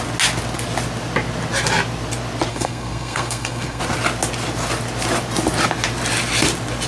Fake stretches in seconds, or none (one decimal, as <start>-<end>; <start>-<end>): 2.5-3.8